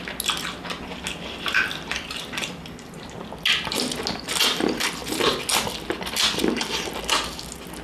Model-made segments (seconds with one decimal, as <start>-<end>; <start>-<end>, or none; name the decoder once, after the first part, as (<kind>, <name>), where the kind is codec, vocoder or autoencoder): none